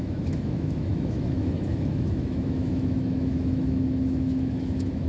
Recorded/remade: remade